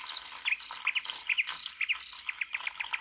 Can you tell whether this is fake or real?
real